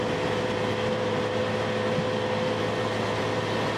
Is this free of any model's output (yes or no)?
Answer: yes